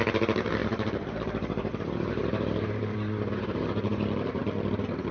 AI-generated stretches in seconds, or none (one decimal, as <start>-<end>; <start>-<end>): 0.0-4.4